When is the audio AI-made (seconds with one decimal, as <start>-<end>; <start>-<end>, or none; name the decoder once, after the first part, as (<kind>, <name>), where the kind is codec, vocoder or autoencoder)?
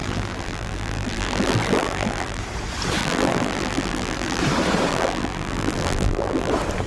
0.0-2.4 (vocoder, BigVGAN v2); 3.0-4.4; 4.9-6.5